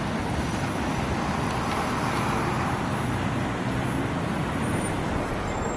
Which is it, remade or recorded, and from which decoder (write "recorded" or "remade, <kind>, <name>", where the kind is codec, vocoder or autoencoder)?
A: recorded